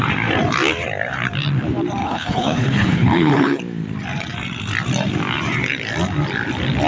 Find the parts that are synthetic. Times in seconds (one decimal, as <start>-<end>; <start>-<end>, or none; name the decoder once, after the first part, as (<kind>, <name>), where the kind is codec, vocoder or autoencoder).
2.0-3.6 (codec, HILCodec)